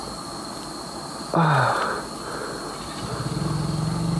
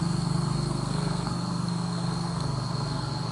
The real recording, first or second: first